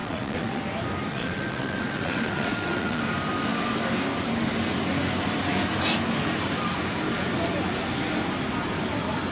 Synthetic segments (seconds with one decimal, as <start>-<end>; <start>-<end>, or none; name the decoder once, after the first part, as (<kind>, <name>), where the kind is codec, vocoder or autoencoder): 0.0-0.6 (vocoder, WaveNeXt); 1.1-3.0